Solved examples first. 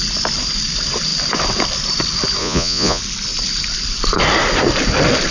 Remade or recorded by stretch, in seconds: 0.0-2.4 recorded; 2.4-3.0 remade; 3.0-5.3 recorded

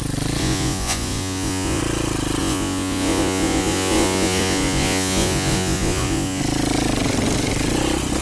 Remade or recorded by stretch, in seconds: 0.0-0.4 recorded; 0.4-1.8 remade; 1.8-2.4 recorded; 2.4-6.4 remade; 6.4-8.2 recorded

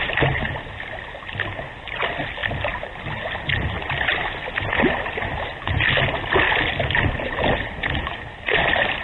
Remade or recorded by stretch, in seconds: 0.0-9.0 recorded

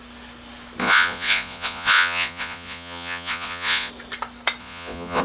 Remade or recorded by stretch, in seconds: 0.0-0.8 recorded; 0.8-3.9 remade; 3.9-4.6 recorded; 4.6-5.2 remade